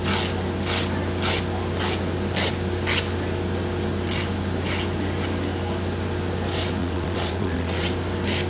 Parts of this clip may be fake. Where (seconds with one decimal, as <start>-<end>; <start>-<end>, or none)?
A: 6.8-7.9